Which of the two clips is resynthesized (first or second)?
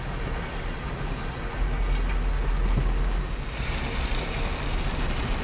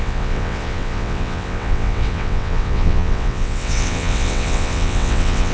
second